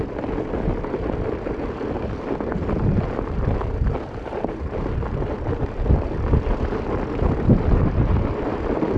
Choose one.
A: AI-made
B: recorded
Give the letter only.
B